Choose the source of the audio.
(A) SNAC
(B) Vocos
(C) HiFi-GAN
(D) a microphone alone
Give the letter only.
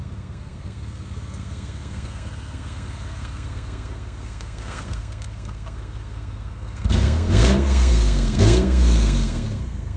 A